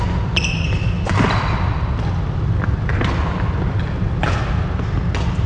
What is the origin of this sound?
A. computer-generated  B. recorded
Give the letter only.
B